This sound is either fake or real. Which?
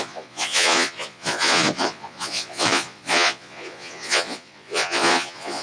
fake